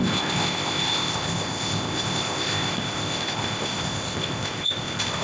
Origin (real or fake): fake